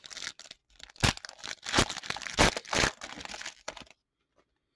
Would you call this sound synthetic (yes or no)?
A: no